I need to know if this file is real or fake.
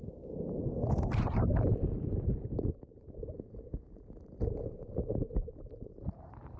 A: fake